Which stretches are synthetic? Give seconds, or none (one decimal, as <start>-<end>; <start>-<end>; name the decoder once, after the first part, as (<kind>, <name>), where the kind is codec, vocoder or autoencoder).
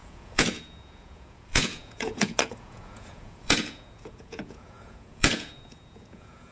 0.0-6.5 (vocoder, Vocos)